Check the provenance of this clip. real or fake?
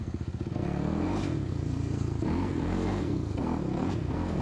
fake